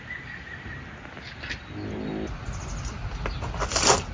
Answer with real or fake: real